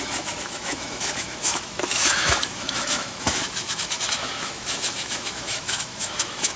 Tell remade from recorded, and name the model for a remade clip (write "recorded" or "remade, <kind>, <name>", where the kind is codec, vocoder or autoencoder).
remade, autoencoder, DAC-VAE